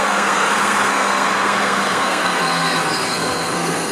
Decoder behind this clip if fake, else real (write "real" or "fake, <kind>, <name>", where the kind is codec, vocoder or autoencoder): fake, codec, SNAC